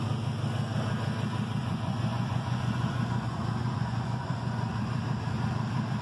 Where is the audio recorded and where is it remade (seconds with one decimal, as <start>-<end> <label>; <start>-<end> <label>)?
0.0-1.6 recorded; 1.6-5.0 remade; 5.0-6.0 recorded